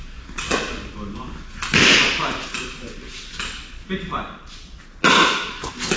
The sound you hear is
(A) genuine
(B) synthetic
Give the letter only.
A